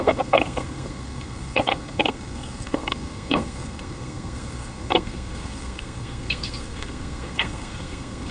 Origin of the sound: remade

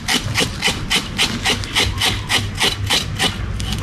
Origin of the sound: recorded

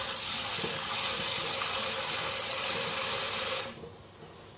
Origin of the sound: recorded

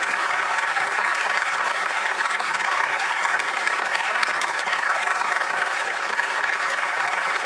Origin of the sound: remade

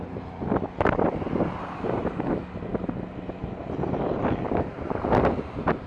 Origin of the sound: recorded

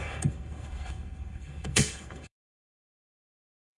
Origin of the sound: remade